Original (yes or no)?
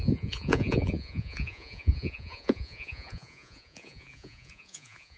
no